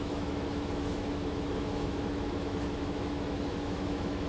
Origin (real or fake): fake